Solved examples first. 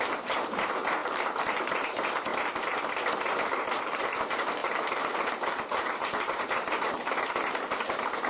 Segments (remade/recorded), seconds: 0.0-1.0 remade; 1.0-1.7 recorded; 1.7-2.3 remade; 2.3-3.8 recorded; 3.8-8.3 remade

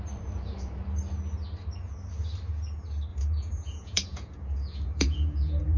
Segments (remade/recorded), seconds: 0.0-3.1 recorded; 3.1-5.8 remade